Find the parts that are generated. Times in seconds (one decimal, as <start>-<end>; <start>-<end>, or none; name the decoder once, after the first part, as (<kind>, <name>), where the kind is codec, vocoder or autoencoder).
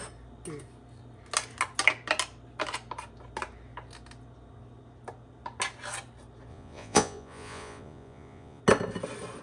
6.5-8.6 (vocoder, Vocos)